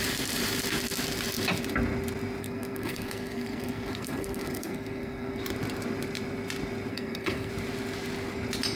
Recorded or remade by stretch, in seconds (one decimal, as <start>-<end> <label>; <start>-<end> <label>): 0.0-2.4 recorded; 2.4-5.4 remade; 5.4-6.9 recorded; 6.9-7.5 remade; 7.5-8.8 recorded